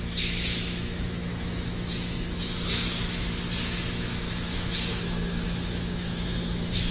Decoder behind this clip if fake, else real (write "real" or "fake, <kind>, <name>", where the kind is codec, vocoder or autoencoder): fake, autoencoder, DAC-VAE